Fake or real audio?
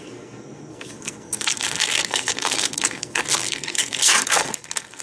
fake